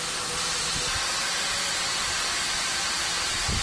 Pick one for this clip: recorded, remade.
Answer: recorded